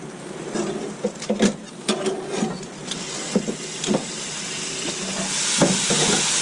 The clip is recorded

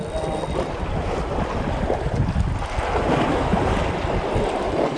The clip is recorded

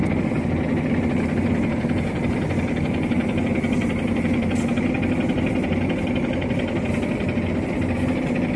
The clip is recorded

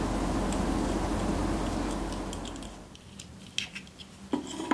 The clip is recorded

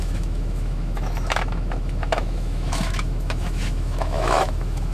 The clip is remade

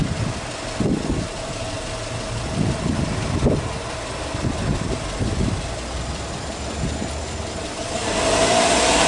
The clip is recorded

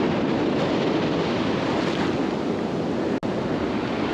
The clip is recorded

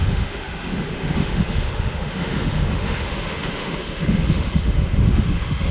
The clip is remade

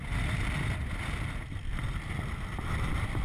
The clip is recorded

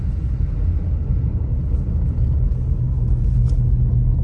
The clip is recorded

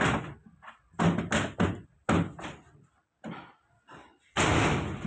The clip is recorded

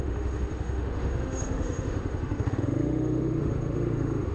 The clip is remade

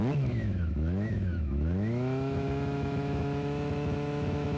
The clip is remade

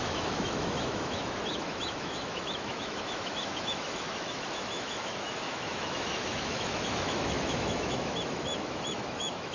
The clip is remade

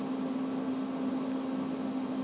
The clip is recorded